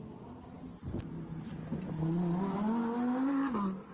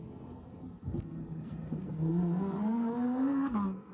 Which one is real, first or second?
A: first